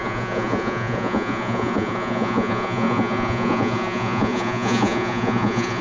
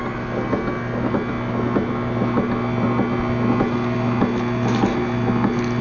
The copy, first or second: first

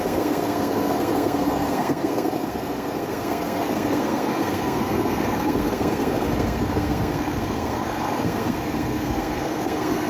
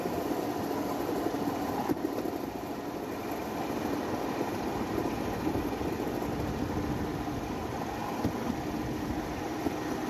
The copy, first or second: first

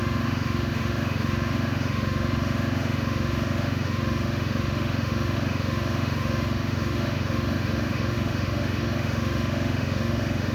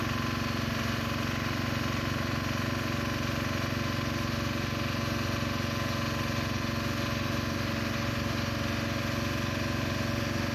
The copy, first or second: first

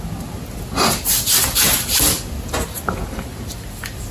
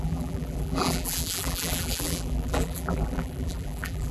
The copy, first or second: second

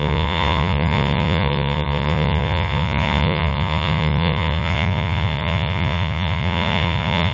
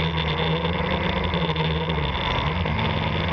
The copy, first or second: first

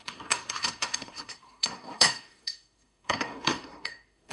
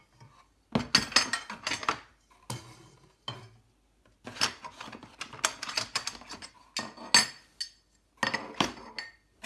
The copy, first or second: first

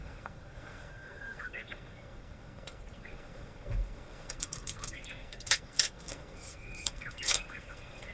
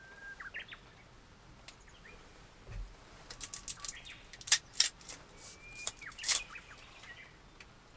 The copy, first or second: first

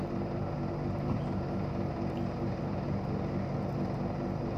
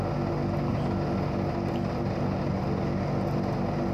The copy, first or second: first